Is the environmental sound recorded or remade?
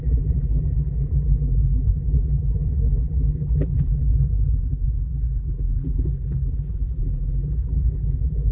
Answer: remade